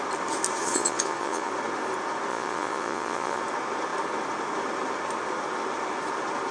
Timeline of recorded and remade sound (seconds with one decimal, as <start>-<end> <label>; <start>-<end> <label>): 0.0-0.6 recorded; 0.6-1.5 remade; 1.5-2.3 recorded; 2.3-3.4 remade; 3.4-6.5 recorded